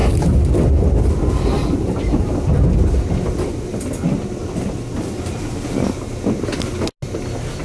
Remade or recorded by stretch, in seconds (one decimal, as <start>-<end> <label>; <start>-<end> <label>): 0.0-7.6 recorded